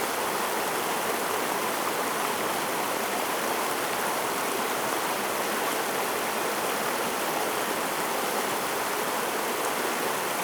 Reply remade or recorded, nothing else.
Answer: recorded